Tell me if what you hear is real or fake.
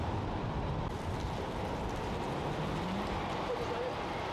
real